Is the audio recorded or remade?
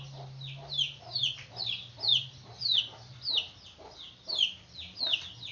recorded